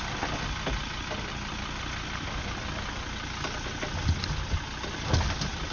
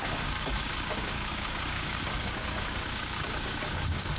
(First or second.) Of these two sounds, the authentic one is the first